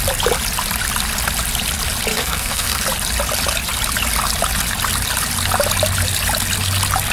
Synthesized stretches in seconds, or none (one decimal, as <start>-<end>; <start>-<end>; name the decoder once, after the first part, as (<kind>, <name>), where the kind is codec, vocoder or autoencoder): 2.1-2.8 (codec, SNAC)